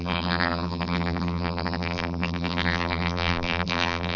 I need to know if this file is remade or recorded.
remade